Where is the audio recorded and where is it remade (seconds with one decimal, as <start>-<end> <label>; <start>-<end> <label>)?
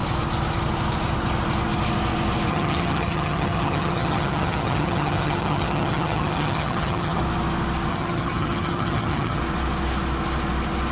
0.0-2.5 recorded; 2.5-7.2 remade; 7.2-7.9 recorded; 7.9-9.4 remade; 9.4-10.9 recorded